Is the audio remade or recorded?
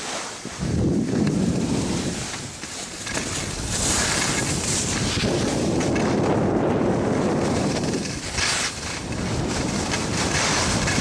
recorded